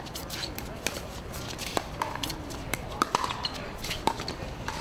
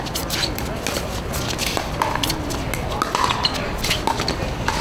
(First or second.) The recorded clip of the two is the second